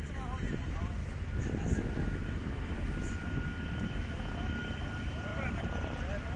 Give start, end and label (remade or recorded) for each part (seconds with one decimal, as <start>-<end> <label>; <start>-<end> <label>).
0.0-1.0 recorded; 1.0-4.8 remade; 4.8-6.4 recorded